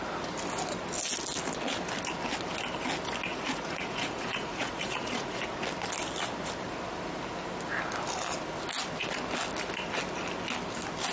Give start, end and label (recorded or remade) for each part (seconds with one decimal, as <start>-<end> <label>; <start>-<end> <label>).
0.0-3.3 recorded; 3.3-5.4 remade; 5.4-11.1 recorded